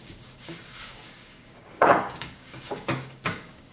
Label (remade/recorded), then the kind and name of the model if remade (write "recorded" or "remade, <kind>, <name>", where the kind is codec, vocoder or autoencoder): remade, codec, DAC